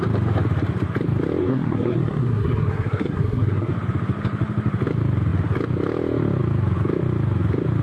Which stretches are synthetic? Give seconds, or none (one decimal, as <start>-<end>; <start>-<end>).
1.4-3.7